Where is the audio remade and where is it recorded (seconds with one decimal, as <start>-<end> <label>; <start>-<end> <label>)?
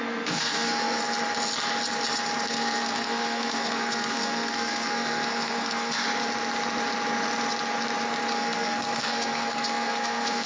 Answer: 0.0-1.0 remade; 1.0-2.5 recorded; 2.5-6.0 remade; 6.0-8.3 recorded; 8.3-10.5 remade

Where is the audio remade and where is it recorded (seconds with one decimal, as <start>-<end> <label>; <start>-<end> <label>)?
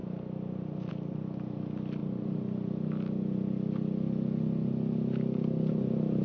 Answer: 0.0-6.2 recorded